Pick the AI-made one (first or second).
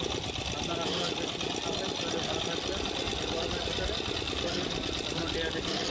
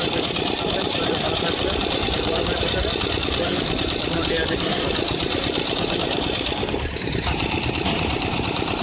second